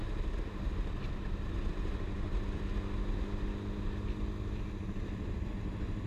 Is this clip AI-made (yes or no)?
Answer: no